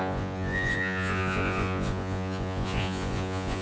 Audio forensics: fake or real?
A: fake